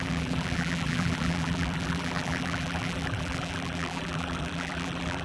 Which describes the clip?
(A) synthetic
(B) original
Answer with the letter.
A